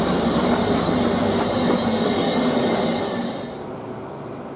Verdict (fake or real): real